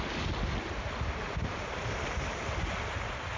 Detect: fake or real real